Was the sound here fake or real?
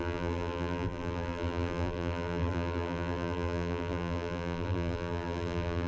fake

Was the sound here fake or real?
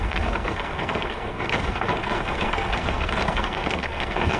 fake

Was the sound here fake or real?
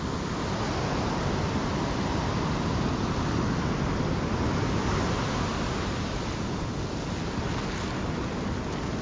real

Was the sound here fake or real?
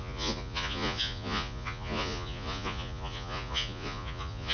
fake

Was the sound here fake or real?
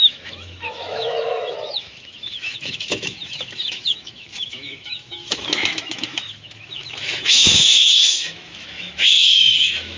fake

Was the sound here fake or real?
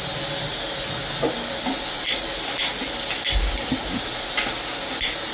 real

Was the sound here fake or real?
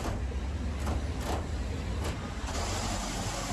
real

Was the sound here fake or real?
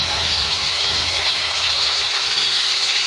fake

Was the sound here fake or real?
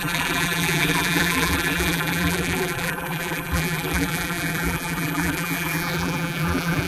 fake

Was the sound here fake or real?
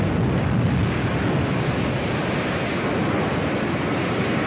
real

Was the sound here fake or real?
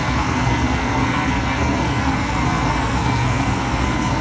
fake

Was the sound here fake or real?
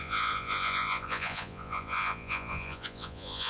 fake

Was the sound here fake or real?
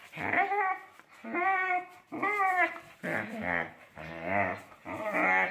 real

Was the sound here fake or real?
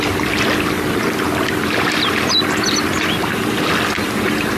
real